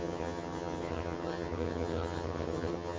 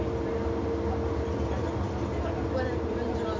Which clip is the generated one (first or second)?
first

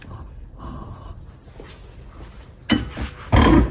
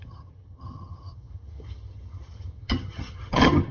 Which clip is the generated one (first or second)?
second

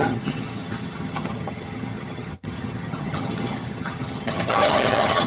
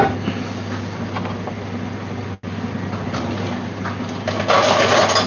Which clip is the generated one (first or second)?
first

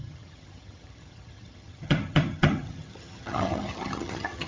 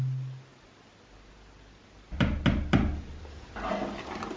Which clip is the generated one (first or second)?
first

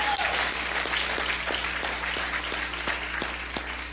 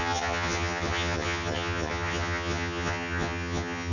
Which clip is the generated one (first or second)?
second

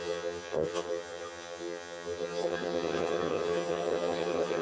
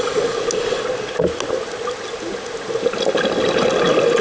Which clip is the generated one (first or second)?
first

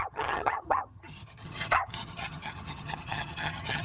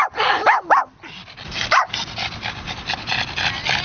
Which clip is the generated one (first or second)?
first